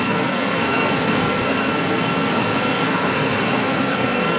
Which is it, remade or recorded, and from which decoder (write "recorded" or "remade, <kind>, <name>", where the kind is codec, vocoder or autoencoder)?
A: remade, codec, SNAC